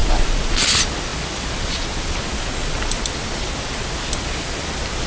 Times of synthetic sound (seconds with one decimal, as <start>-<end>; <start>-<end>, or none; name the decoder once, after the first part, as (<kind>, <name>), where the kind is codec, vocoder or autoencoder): none